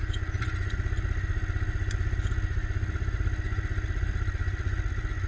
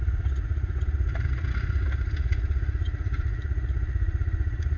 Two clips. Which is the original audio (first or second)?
first